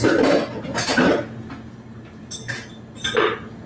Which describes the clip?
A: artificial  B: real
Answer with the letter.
B